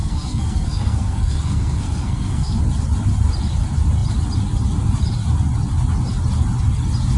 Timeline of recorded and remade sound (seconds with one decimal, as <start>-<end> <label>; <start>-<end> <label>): 0.0-2.6 remade; 2.6-7.2 recorded

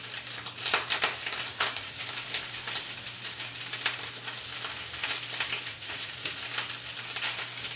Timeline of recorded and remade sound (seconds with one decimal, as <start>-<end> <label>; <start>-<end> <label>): 0.0-1.5 recorded; 1.5-2.0 remade; 2.0-5.7 recorded; 5.7-6.4 remade; 6.4-7.8 recorded